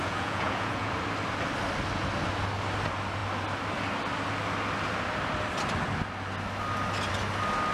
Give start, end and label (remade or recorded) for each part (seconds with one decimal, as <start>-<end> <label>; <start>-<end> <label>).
0.0-0.9 remade; 0.9-7.7 recorded

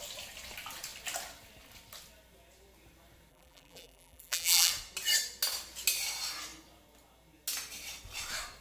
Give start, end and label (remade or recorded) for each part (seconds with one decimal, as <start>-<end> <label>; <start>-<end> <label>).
0.0-3.3 recorded; 3.3-4.7 remade; 4.7-8.6 recorded

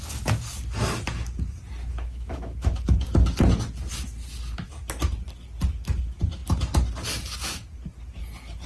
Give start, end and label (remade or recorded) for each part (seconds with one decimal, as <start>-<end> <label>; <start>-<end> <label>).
0.0-1.8 recorded; 1.8-2.8 remade; 2.8-8.7 recorded

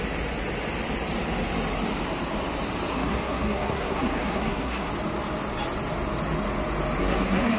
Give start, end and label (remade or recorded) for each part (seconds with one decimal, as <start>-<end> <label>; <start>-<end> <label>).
0.0-2.9 recorded; 2.9-4.9 remade; 4.9-7.0 recorded; 7.0-7.6 remade

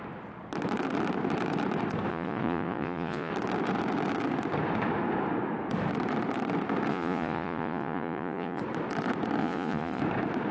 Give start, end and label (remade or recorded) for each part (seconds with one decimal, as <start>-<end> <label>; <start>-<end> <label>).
0.0-2.1 recorded; 2.1-3.3 remade; 3.3-6.9 recorded; 6.9-8.6 remade; 8.6-9.4 recorded; 9.4-10.0 remade; 10.0-10.5 recorded

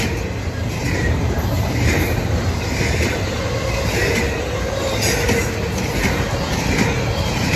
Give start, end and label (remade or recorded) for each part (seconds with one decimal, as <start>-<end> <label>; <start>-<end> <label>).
0.0-0.6 recorded; 0.6-3.4 remade; 3.4-7.6 recorded

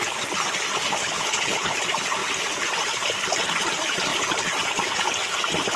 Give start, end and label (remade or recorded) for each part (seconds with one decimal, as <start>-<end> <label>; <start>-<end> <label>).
0.0-1.0 recorded; 1.0-1.8 remade; 1.8-5.8 recorded